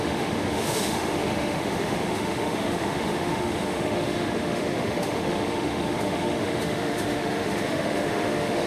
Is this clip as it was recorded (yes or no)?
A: no